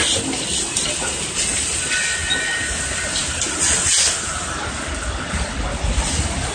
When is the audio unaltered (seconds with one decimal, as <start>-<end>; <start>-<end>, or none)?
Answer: 0.0-6.5